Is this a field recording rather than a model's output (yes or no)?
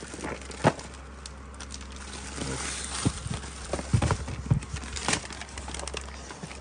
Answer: yes